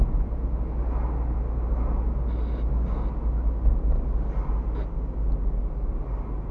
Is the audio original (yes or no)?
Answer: yes